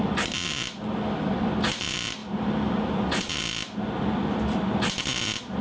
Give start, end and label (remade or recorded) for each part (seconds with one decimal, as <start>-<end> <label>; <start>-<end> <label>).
0.0-5.6 recorded